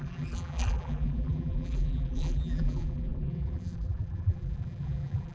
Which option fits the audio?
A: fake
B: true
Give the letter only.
A